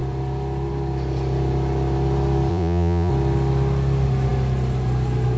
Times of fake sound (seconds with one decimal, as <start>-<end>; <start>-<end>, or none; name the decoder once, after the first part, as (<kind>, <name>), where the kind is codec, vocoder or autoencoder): 2.5-3.1 (vocoder, Vocos)